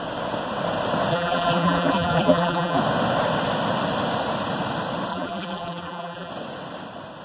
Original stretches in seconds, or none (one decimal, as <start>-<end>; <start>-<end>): 0.0-1.1; 2.8-5.1; 6.3-7.2